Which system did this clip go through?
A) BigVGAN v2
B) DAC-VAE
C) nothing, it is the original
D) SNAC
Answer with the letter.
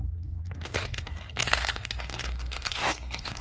D